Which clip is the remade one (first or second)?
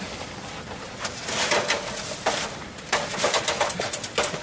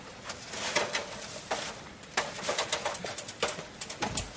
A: second